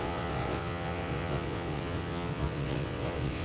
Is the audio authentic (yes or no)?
no